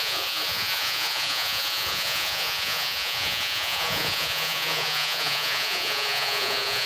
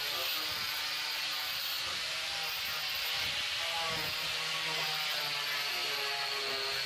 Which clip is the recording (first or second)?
second